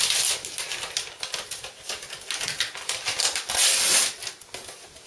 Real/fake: real